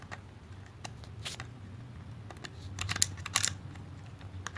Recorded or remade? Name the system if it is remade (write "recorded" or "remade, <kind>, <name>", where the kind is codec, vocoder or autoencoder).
recorded